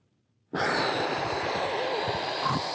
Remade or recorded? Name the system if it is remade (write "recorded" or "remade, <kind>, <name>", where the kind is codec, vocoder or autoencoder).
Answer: recorded